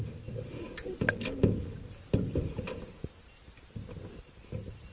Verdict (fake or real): real